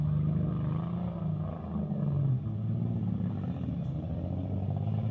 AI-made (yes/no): no